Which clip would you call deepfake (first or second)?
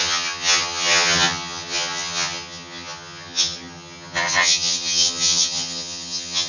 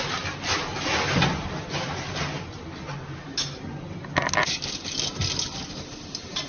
first